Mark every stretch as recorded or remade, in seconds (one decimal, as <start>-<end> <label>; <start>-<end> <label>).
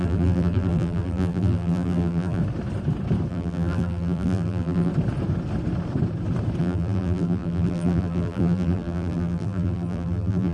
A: 0.0-2.4 remade; 2.4-3.3 recorded; 3.3-4.9 remade; 4.9-6.6 recorded; 6.6-10.5 remade